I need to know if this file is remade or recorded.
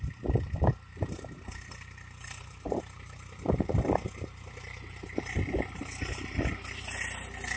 recorded